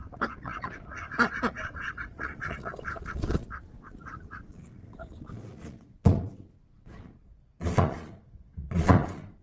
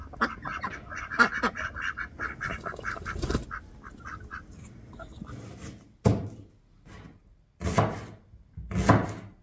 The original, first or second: second